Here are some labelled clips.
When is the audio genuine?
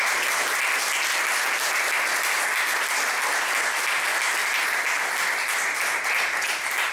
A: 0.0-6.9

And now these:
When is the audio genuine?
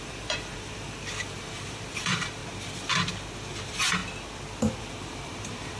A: 2.4-3.5; 4.0-4.8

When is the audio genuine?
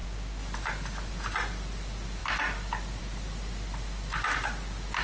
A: 0.0-5.0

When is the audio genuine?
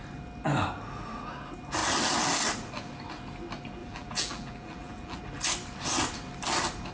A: 0.0-3.8; 5.2-6.9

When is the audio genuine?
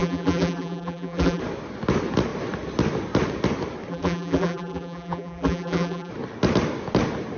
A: 1.4-3.9; 6.1-7.4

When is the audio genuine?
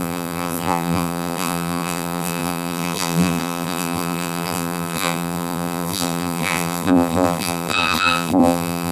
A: none